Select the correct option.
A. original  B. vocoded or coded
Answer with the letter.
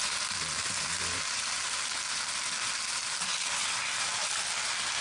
A